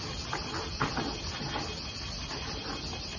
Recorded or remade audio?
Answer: recorded